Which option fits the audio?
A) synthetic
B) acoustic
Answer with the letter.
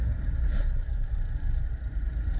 A